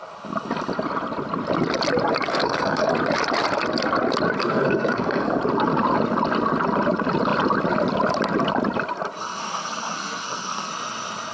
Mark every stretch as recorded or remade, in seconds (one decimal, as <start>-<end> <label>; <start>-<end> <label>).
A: 0.0-2.3 recorded; 2.3-2.9 remade; 2.9-4.4 recorded; 4.4-5.4 remade; 5.4-9.2 recorded; 9.2-10.7 remade; 10.7-11.3 recorded